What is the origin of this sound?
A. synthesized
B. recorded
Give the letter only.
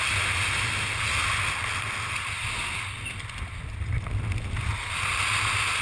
B